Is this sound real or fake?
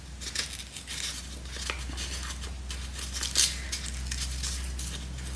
real